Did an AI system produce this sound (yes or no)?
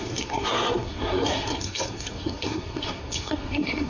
yes